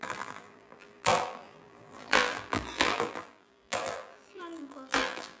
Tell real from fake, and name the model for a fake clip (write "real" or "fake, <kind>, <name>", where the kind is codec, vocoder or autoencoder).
fake, vocoder, BigVGAN v2